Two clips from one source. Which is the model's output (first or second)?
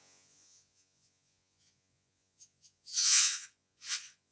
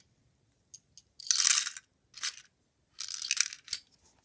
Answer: first